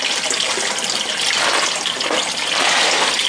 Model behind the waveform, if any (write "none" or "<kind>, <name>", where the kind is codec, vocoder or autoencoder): none